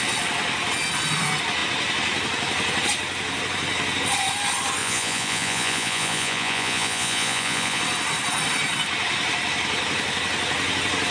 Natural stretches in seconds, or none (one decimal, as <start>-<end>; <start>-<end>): 0.0-4.8; 7.8-11.1

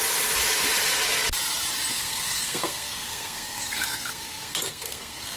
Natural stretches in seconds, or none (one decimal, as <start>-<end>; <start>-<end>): 0.0-1.9

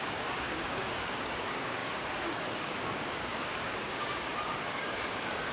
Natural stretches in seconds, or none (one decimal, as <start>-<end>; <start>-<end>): none

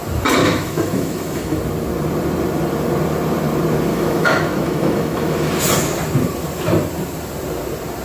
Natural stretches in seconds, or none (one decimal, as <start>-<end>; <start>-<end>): 0.0-0.4; 1.6-3.9; 5.5-8.0

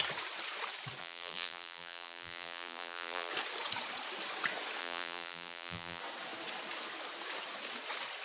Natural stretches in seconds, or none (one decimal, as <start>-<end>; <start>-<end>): 0.0-1.0; 3.3-4.8; 6.0-8.2

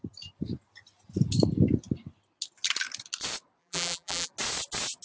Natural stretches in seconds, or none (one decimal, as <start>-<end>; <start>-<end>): 0.0-3.6; 4.3-5.0

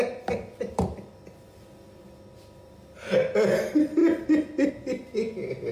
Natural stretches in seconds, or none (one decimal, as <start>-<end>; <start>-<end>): 0.0-5.7